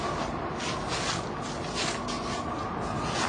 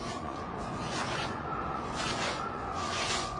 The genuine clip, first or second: first